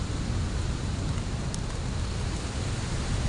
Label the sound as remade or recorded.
recorded